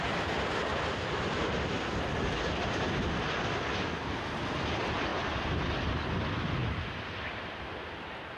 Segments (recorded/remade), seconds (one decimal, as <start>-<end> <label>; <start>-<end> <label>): 0.0-0.7 recorded; 0.7-1.4 remade; 1.4-6.6 recorded; 6.6-7.7 remade; 7.7-8.4 recorded

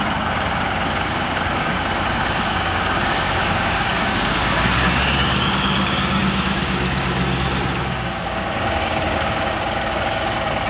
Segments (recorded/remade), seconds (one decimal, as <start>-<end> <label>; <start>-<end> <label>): 0.0-10.7 remade

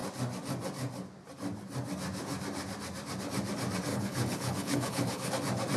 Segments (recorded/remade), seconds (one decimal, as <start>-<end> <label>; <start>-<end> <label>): 0.0-3.9 recorded; 3.9-5.3 remade; 5.3-5.8 recorded

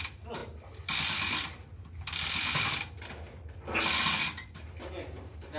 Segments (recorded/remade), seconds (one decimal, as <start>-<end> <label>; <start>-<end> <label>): 0.0-5.6 recorded